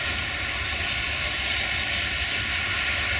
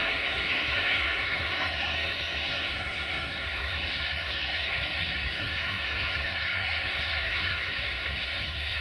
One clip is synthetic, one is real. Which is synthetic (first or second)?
second